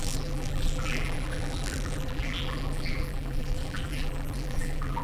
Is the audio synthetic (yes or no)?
yes